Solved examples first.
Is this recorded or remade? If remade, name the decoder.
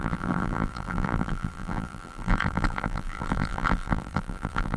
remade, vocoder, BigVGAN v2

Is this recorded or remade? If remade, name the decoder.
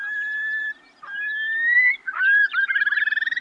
remade, vocoder, BigVGAN v2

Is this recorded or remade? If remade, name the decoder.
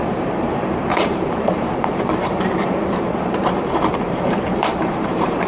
remade, vocoder, BigVGAN v2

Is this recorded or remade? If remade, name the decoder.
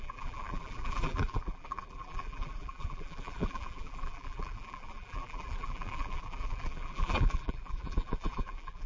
remade, vocoder, BigVGAN v2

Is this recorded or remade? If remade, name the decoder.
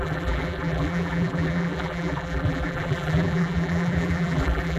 remade, vocoder, BigVGAN v2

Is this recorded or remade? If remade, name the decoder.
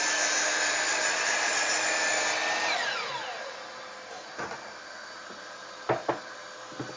recorded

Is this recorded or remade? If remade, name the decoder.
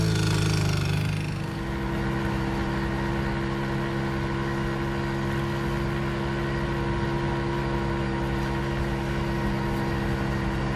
recorded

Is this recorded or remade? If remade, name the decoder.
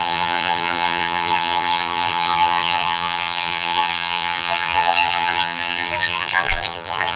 remade, vocoder, BigVGAN v2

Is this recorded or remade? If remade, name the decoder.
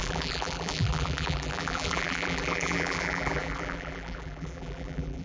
remade, vocoder, BigVGAN v2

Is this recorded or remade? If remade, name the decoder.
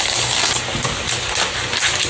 recorded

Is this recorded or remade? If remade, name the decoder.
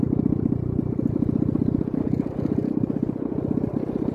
recorded